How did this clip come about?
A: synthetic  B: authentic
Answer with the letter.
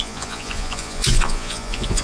A